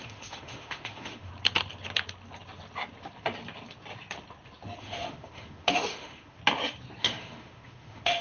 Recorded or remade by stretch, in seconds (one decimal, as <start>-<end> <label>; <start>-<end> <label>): 0.0-1.3 remade; 1.3-4.8 recorded; 4.8-6.4 remade; 6.4-7.0 recorded; 7.0-8.2 remade